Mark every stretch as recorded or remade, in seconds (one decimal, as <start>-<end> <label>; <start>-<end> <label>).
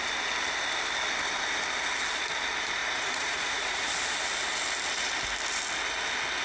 0.0-2.8 recorded; 2.8-3.9 remade; 3.9-6.4 recorded